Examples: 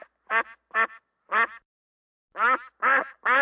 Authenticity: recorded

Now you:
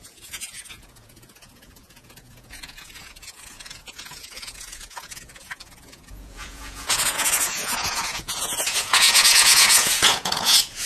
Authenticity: remade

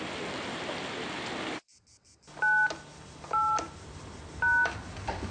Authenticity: recorded